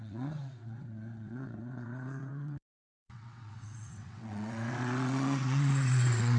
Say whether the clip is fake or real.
fake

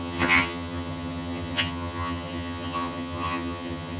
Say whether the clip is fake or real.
fake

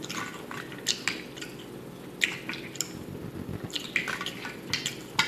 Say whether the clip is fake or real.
real